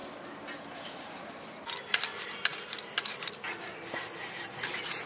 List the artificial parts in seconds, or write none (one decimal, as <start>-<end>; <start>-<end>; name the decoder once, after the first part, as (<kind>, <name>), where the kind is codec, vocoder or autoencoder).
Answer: none